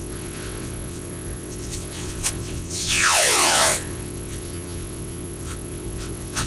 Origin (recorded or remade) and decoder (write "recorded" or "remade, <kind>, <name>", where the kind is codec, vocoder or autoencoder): remade, vocoder, WaveNeXt